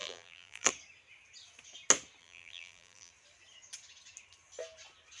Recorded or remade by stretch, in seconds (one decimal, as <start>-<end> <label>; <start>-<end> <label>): 0.0-0.7 remade; 0.7-2.2 recorded; 2.2-3.1 remade; 3.1-5.2 recorded